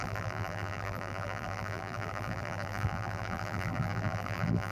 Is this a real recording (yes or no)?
no